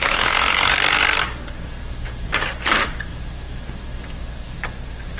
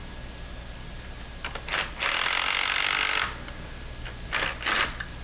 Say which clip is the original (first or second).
second